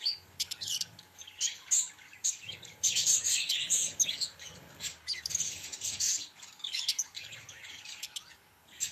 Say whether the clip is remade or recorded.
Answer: remade